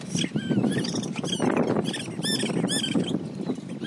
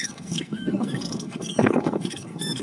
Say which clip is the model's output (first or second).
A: second